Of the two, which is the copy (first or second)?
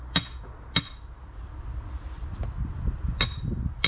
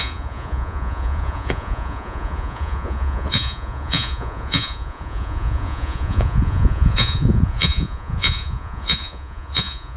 second